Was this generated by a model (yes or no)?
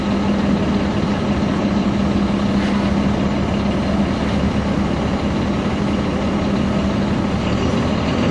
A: no